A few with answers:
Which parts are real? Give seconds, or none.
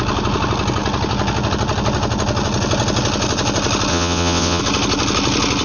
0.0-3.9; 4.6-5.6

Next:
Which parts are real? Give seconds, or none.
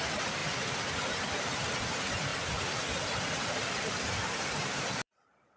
0.0-5.6